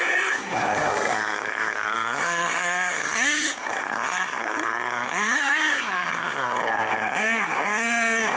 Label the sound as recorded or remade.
remade